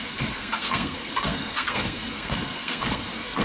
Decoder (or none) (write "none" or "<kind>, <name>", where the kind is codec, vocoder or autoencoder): codec, SNAC